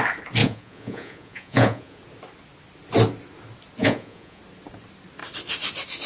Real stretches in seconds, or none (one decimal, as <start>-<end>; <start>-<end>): 0.0-0.4; 2.0-3.8; 4.4-6.1